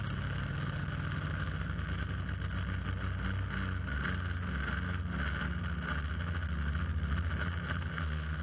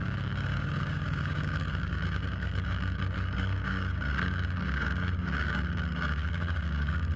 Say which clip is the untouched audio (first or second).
first